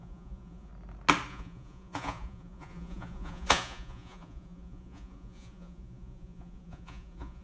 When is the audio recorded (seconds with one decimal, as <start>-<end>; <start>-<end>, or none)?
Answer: 0.7-1.3